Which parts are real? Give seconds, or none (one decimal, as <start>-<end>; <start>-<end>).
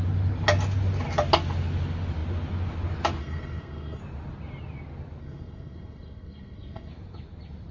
0.0-3.2; 4.0-5.2; 6.9-7.7